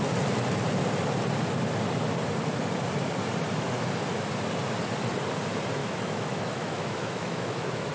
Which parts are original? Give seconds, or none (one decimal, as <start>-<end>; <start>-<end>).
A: 0.0-5.8